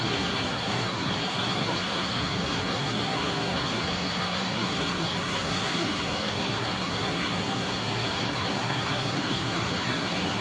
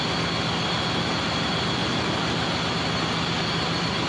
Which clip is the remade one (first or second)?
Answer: first